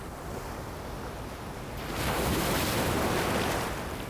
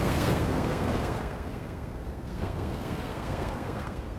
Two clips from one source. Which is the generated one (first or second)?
second